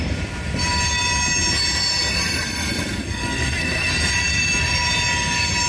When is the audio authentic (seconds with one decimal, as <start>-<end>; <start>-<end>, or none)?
0.0-3.0; 3.9-5.7